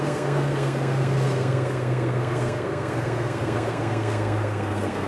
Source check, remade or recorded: remade